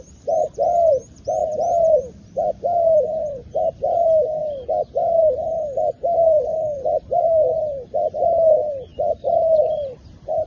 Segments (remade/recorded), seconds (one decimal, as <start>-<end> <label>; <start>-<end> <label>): 0.0-4.4 remade; 4.4-5.1 recorded; 5.1-10.5 remade